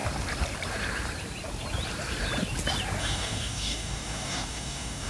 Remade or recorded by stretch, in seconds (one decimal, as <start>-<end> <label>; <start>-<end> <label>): 0.0-3.0 recorded; 3.0-5.1 remade